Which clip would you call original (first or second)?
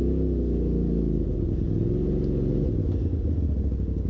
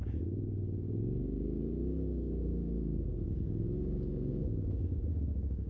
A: first